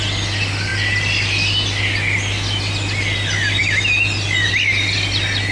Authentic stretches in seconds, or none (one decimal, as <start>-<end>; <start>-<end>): 0.0-5.5